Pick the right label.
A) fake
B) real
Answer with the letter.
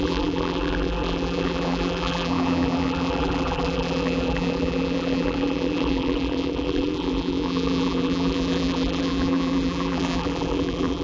A